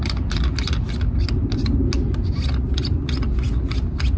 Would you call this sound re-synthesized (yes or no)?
no